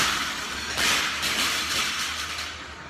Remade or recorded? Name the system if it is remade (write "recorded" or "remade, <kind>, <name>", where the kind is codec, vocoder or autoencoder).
recorded